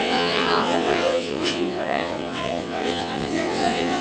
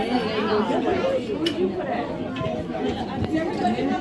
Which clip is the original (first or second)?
second